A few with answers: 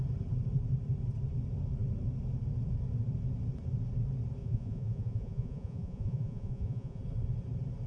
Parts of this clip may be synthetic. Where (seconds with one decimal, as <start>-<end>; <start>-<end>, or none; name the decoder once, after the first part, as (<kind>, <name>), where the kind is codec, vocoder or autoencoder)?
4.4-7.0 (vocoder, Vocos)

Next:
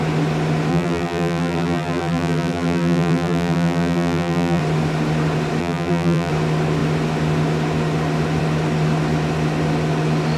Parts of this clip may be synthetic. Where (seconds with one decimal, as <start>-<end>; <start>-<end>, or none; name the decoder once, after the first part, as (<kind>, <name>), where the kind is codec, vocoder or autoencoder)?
0.7-4.6 (vocoder, BigVGAN v2); 5.6-6.3

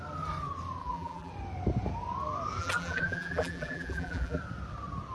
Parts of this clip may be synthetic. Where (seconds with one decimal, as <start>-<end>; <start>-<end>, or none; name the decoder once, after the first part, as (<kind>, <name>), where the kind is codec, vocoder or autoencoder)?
0.8-1.3 (vocoder, BigVGAN v2); 2.6-4.4